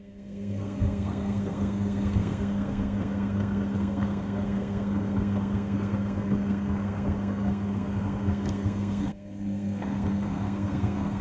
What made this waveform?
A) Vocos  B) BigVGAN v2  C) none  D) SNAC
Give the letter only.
D